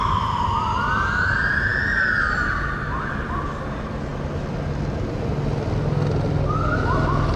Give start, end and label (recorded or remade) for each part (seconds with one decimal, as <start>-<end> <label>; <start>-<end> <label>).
0.0-7.4 recorded